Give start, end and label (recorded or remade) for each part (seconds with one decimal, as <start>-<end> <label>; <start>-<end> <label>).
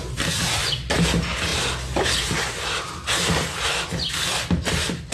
0.0-5.1 recorded